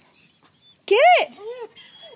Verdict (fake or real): real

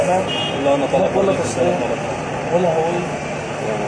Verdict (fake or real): real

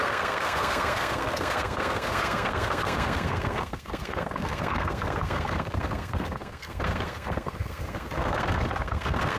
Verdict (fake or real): fake